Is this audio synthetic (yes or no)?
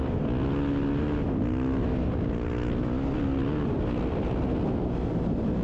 no